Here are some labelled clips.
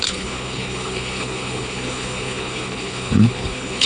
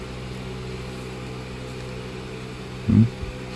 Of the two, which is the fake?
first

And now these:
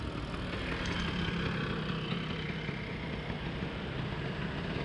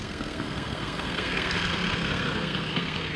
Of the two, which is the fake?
second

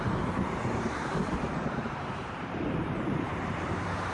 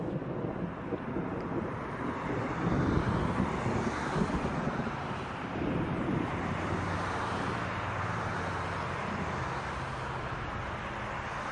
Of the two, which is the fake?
first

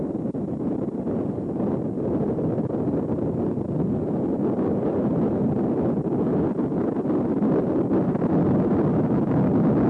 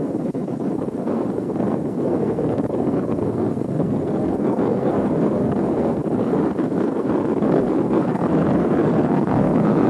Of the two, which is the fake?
second